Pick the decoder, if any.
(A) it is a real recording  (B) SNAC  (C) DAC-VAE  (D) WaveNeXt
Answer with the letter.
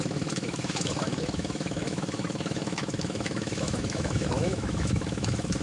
C